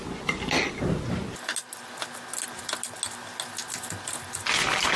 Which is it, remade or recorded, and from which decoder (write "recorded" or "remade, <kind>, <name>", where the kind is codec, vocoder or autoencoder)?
recorded